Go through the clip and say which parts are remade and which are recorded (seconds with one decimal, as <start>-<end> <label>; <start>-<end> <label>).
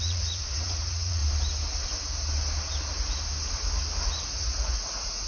0.0-1.2 remade; 1.2-4.4 recorded; 4.4-5.3 remade